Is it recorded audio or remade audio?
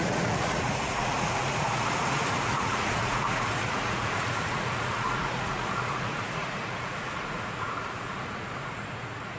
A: remade